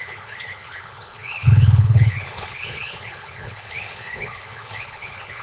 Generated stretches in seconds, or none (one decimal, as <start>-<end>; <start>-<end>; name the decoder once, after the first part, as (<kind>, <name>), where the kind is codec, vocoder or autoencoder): 0.0-5.4 (codec, HILCodec)

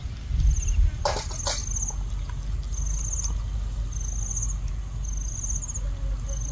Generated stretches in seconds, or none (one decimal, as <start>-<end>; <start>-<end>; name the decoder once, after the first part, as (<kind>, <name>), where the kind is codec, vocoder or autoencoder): none